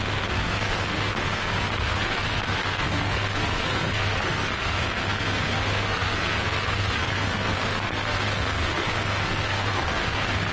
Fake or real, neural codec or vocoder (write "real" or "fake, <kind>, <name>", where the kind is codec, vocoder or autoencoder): fake, codec, SNAC